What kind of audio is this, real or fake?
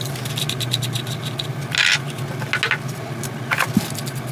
real